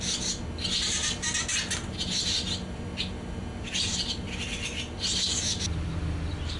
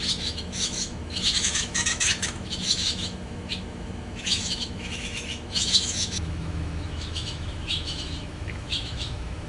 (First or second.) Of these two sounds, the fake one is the second